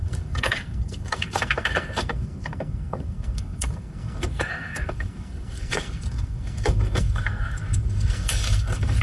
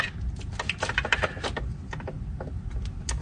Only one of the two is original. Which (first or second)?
second